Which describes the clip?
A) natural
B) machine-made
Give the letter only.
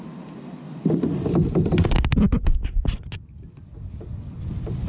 A